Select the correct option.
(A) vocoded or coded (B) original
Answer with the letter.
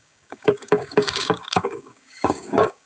A